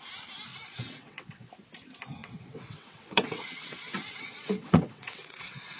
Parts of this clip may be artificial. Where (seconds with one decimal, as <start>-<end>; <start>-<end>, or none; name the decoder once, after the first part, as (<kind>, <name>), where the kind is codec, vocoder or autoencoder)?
0.5-1.5 (vocoder, WaveNeXt); 2.2-5.8